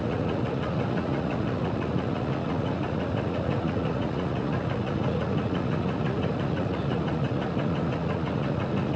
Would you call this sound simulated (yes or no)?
yes